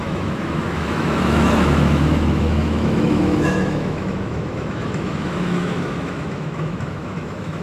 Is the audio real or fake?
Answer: fake